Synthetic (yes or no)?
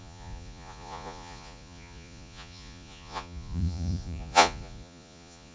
yes